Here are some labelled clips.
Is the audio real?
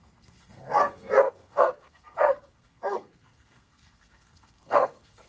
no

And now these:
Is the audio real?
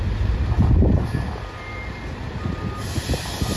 yes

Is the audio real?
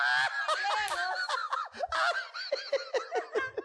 yes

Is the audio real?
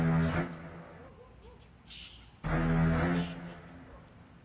yes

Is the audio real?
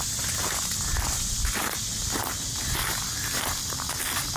yes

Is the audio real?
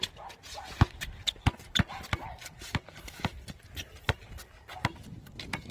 yes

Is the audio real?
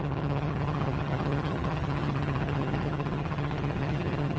no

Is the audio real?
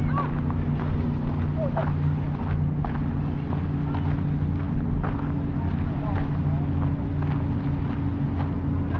yes